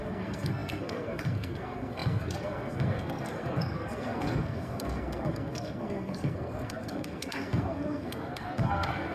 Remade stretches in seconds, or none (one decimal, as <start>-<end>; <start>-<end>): 0.0-9.1